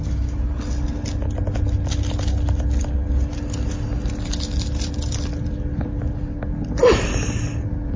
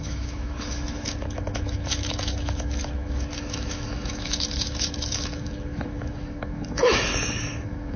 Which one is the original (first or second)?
first